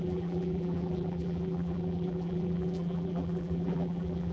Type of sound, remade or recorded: remade